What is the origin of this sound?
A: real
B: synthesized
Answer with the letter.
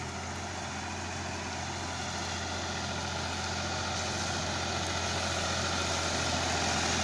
A